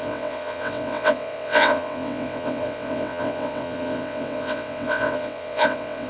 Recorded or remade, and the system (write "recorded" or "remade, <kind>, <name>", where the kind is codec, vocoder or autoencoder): remade, vocoder, WaveNeXt